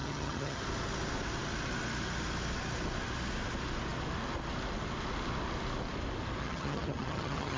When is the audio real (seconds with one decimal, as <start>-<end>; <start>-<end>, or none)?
0.6-6.4